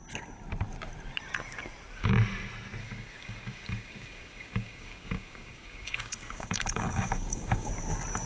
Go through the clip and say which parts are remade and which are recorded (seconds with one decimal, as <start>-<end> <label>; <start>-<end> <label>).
0.0-2.8 recorded; 2.8-7.7 remade; 7.7-8.3 recorded